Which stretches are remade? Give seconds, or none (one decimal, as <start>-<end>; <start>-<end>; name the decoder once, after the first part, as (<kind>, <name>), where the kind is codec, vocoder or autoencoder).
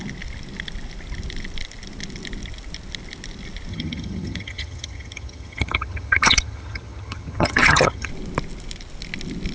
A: 3.7-8.1 (vocoder, HiFi-GAN)